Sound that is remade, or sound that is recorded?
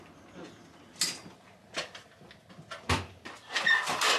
recorded